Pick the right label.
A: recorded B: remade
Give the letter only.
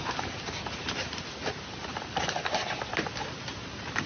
A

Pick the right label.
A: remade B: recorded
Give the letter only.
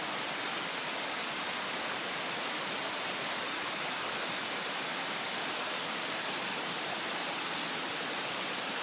B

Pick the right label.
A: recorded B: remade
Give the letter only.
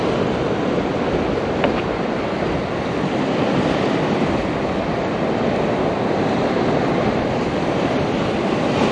A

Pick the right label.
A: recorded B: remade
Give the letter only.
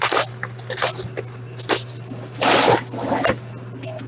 A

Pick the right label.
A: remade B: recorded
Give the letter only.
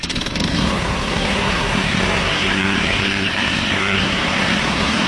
A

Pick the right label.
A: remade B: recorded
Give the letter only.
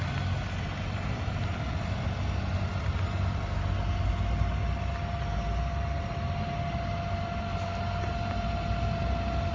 B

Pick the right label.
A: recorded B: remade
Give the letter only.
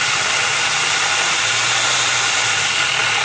A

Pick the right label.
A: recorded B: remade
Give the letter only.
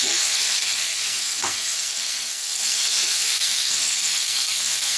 B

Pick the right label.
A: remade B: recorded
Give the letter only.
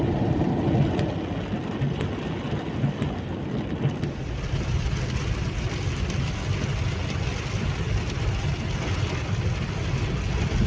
B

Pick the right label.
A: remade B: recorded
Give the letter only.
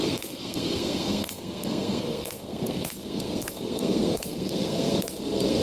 A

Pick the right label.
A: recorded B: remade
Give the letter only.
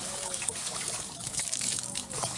B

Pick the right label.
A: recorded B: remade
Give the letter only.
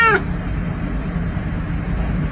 A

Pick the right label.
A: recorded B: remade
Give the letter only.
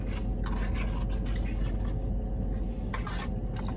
A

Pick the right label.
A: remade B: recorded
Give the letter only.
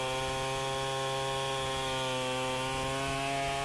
B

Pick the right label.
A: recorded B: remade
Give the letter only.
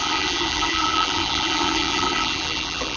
B